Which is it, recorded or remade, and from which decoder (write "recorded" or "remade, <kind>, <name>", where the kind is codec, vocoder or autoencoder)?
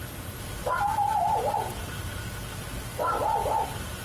recorded